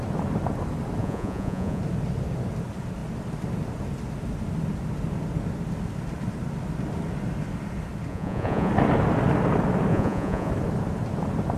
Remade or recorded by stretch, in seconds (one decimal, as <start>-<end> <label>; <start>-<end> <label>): 0.0-1.0 recorded; 1.0-1.8 remade; 1.8-8.1 recorded; 8.1-8.7 remade; 8.7-9.9 recorded; 9.9-10.5 remade; 10.5-11.6 recorded